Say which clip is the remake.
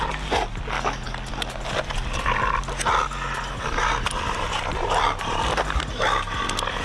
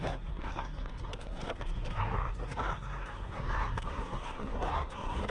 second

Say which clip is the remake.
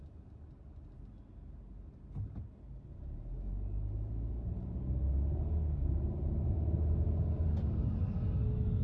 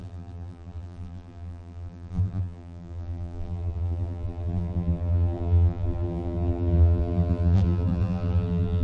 second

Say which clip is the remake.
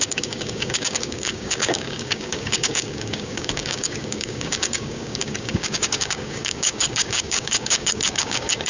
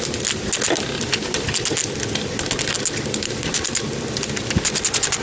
first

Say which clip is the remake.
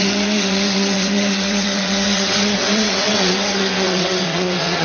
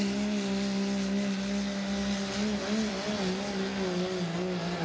first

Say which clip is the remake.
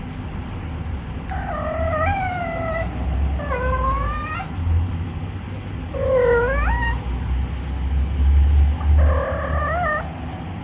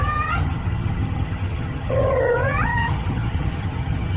second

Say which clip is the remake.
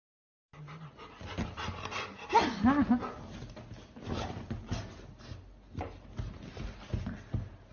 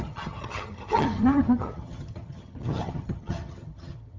second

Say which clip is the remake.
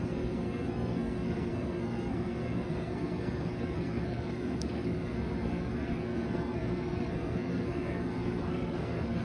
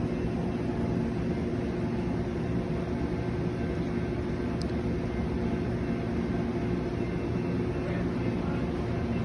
first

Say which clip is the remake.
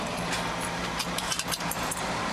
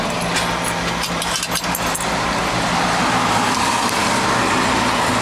first